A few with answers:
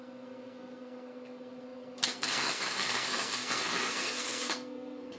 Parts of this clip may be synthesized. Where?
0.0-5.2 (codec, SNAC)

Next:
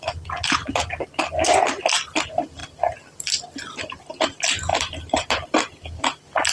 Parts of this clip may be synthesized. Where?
0.6-1.6 (vocoder, BigVGAN v2); 2.6-4.0; 4.7-6.5

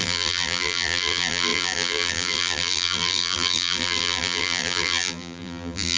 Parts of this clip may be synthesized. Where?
0.0-6.0 (vocoder, BigVGAN v2)